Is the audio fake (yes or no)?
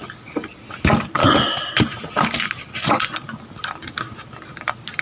no